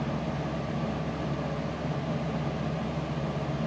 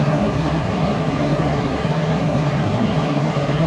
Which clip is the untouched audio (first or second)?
first